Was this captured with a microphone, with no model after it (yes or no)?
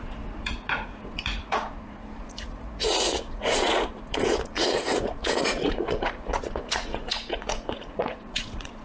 no